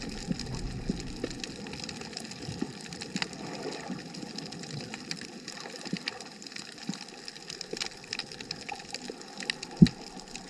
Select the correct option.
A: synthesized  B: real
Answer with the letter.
B